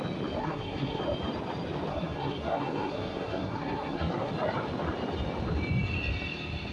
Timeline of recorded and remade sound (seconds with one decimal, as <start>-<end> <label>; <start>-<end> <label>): 0.0-0.4 recorded; 0.4-1.0 remade; 1.0-1.9 recorded; 1.9-4.3 remade; 4.3-6.7 recorded